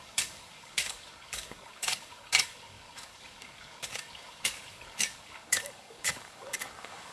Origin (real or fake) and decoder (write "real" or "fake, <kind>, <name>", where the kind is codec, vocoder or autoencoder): fake, codec, DAC